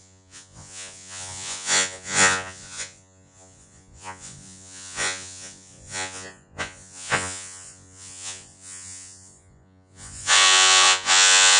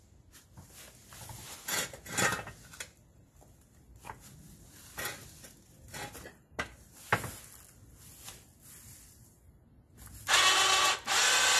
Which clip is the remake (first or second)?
first